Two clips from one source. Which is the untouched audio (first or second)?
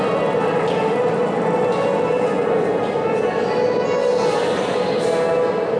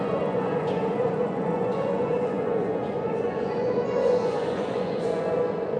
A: first